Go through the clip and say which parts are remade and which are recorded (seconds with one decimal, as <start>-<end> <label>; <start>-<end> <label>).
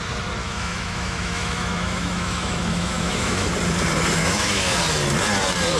0.0-0.4 recorded; 0.4-3.5 remade; 3.5-4.2 recorded; 4.2-4.8 remade; 4.8-5.8 recorded